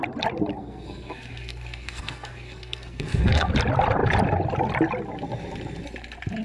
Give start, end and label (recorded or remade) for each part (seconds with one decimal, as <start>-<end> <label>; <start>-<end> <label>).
0.0-0.5 recorded; 0.5-3.5 remade; 3.5-6.4 recorded